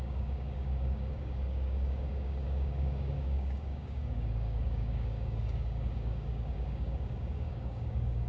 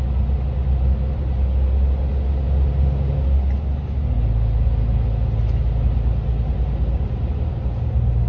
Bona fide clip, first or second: second